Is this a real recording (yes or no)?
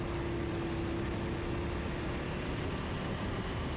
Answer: yes